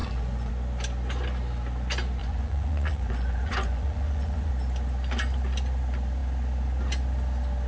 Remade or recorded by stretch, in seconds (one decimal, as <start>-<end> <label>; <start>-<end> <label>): 0.0-0.5 remade; 0.5-2.2 recorded; 2.2-4.5 remade; 4.5-7.7 recorded